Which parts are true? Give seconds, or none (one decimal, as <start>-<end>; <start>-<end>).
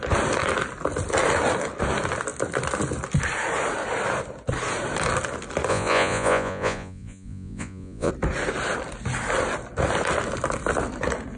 0.0-5.7; 8.1-11.4